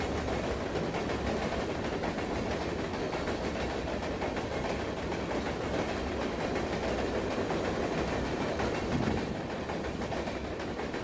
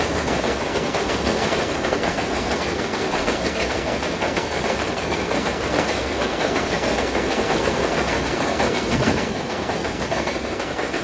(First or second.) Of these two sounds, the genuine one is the first